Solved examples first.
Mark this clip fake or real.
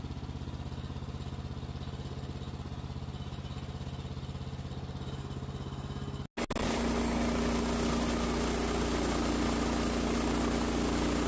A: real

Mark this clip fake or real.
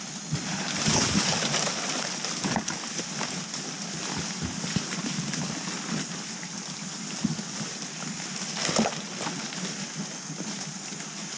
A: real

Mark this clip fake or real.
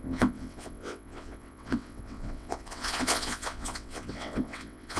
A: fake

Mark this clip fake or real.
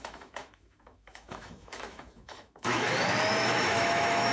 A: fake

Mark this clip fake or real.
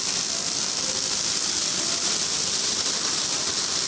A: real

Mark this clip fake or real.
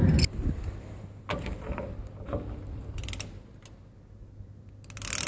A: real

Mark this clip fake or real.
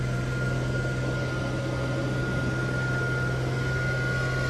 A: real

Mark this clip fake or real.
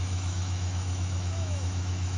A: fake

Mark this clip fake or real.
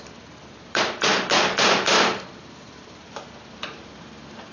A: fake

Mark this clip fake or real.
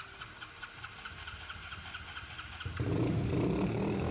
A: real